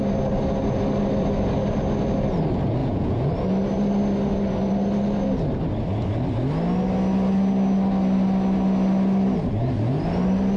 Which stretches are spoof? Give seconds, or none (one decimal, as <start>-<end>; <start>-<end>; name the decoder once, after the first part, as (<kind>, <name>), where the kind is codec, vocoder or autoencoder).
2.8-3.3 (vocoder, Vocos)